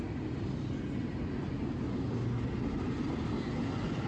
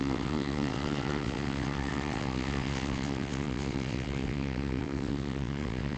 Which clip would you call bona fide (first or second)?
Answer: first